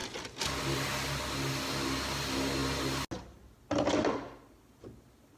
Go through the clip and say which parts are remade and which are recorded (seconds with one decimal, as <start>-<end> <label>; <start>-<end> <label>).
0.0-5.4 recorded

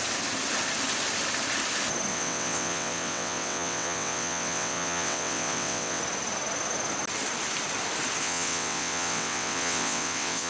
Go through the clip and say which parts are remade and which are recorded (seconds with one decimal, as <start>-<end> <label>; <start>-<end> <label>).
0.0-2.1 recorded; 2.1-6.0 remade; 6.0-8.2 recorded; 8.2-10.5 remade

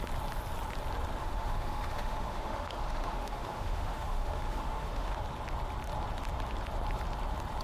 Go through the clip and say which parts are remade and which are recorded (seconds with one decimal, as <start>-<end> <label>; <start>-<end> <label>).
0.0-1.2 recorded; 1.2-5.2 remade; 5.2-7.6 recorded